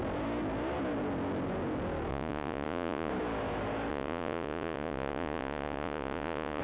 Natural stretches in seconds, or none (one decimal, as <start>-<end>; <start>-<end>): 0.0-2.1; 3.1-3.9